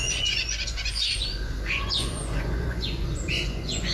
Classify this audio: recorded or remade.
remade